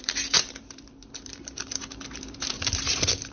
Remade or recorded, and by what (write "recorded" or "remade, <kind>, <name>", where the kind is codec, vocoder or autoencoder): remade, vocoder, BigVGAN v2